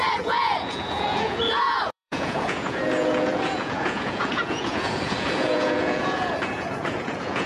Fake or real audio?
fake